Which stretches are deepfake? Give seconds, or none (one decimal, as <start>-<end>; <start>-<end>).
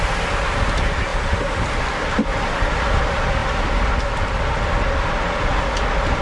1.1-3.0; 3.4-4.6